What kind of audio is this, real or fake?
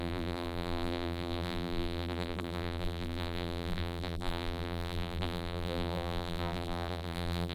fake